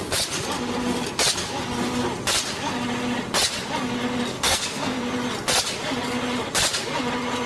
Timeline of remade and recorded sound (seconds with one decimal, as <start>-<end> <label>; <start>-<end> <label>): 0.0-4.3 recorded; 4.3-5.0 remade; 5.0-7.5 recorded